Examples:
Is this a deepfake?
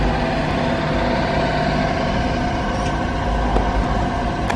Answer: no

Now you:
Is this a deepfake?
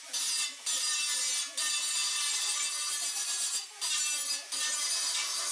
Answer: no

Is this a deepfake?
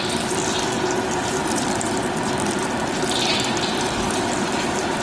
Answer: yes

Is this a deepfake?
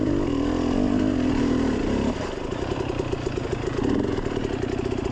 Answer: no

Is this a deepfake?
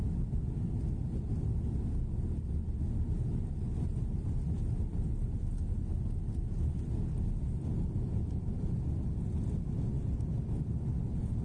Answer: no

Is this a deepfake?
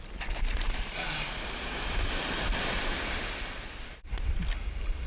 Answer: no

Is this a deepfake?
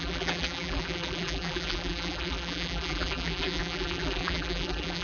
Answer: yes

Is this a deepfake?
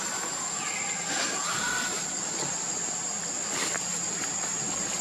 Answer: no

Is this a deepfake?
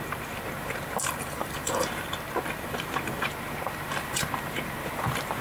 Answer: yes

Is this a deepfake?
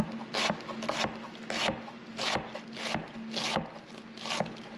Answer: no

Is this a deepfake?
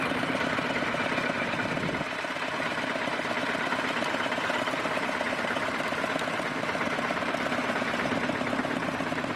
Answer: yes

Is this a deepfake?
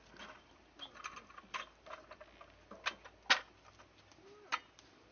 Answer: no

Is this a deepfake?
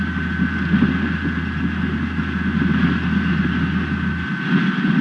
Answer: no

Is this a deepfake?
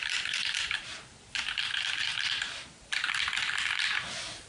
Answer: yes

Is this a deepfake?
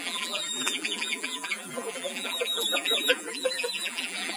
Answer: yes